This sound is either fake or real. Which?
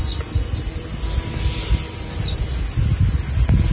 real